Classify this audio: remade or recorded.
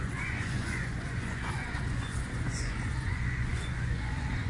remade